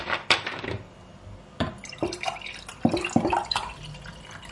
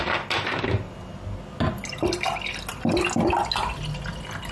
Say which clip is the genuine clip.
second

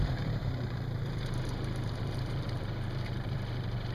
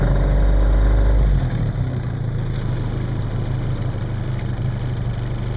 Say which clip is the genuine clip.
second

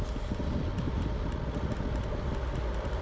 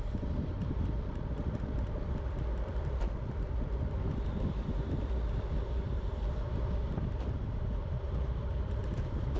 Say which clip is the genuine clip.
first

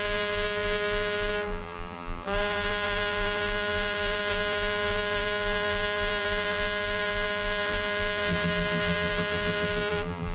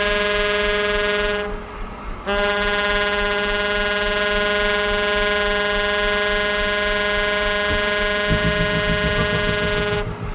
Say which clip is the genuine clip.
second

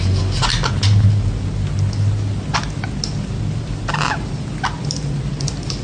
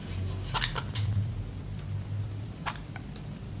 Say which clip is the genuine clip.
first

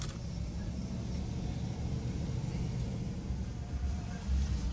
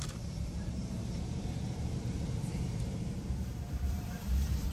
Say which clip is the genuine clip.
first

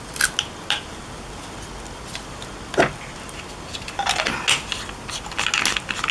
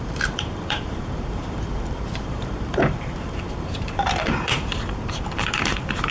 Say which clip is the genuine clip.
first